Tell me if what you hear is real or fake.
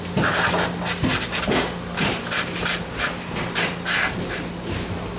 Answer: real